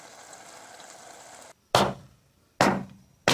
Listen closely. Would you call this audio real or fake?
real